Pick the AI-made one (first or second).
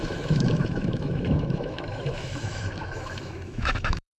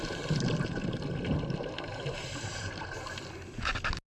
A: first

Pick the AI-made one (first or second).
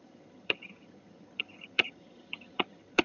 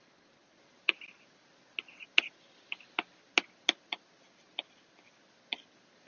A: first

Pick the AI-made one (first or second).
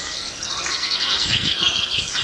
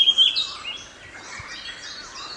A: first